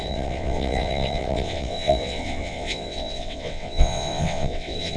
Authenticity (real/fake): fake